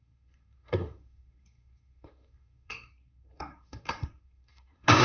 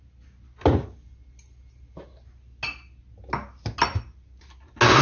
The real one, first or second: second